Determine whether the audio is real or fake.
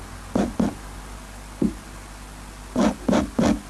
real